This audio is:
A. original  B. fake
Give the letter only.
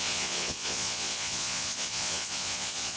B